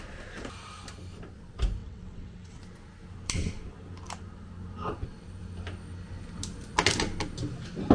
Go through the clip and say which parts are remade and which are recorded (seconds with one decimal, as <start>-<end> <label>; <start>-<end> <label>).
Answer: 0.0-1.8 recorded; 1.8-2.6 remade; 2.6-7.9 recorded